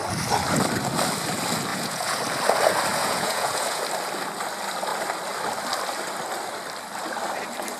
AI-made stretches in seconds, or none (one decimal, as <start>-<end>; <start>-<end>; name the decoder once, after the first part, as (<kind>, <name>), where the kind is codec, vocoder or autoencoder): 1.7-2.2 (vocoder, Vocos); 2.9-3.8